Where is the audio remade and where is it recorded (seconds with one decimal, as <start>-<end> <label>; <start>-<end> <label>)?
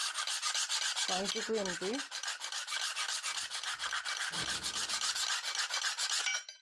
0.0-6.6 recorded